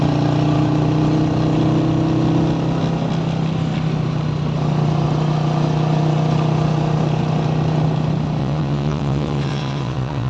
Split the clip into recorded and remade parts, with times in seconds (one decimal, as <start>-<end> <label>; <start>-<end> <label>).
0.0-8.4 recorded; 8.4-10.3 remade